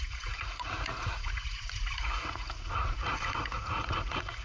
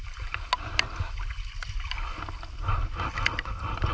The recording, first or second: second